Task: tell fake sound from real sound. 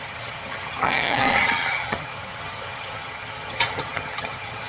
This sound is fake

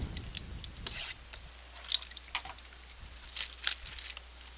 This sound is real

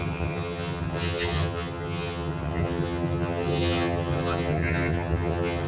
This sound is fake